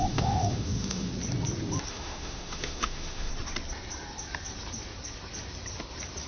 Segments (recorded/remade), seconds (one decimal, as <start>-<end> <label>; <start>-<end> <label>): 0.0-1.1 remade; 1.1-1.9 recorded; 1.9-3.3 remade; 3.3-6.3 recorded